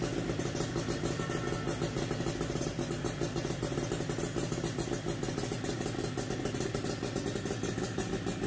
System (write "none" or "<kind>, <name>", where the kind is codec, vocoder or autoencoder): none